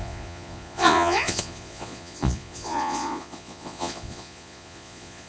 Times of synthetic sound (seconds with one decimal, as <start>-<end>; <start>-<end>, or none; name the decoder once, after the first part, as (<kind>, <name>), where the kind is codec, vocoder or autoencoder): 0.0-5.3 (vocoder, Vocos)